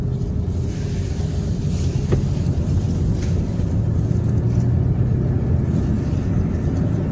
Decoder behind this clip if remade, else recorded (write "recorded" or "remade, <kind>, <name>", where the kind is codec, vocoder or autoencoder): recorded